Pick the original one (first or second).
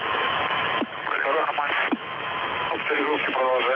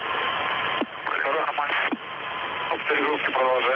second